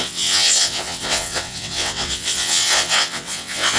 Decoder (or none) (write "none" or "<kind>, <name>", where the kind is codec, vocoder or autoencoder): vocoder, WaveNeXt